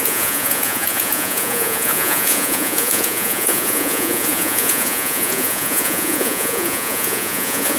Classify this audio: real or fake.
fake